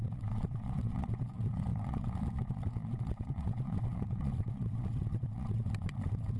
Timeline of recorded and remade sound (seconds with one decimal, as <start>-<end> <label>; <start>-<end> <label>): 0.0-6.4 remade